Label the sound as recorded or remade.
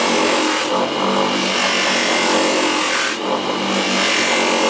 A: recorded